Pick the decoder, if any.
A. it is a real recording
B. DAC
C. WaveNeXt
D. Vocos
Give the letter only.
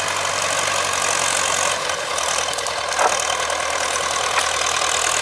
A